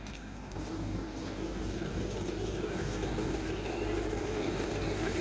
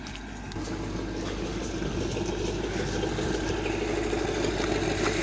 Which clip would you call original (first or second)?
second